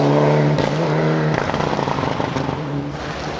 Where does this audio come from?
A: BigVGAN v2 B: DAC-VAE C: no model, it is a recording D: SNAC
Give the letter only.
C